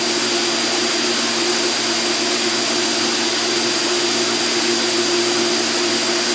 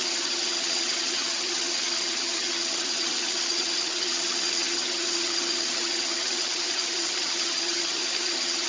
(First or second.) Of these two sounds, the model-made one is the second